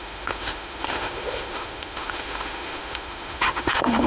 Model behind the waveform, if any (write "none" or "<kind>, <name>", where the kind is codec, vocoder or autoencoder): autoencoder, DAC-VAE